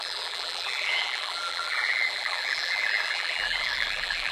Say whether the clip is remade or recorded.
remade